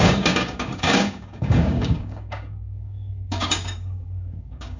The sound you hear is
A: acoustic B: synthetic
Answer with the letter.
B